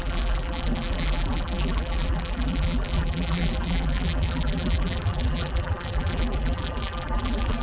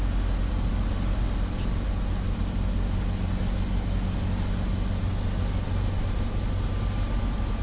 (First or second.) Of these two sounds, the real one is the second